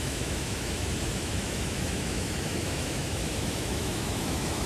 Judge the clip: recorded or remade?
remade